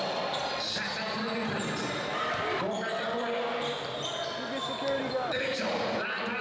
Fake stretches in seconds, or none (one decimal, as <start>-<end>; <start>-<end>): none